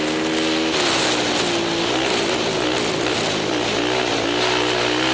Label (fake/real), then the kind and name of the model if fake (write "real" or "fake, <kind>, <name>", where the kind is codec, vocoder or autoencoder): real